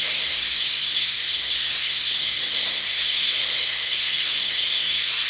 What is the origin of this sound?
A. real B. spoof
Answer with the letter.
B